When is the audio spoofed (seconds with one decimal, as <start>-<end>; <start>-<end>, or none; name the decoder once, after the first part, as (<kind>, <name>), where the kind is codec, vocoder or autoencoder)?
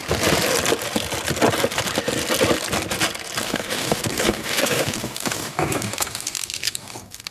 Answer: 3.4-7.3 (codec, DAC)